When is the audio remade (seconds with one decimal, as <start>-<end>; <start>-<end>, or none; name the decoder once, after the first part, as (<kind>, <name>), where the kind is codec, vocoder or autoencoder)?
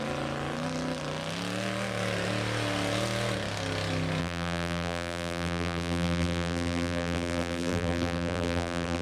4.2-9.0 (vocoder, BigVGAN v2)